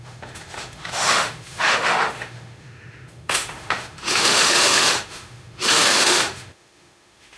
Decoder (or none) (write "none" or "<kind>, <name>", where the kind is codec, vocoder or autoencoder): autoencoder, DAC-VAE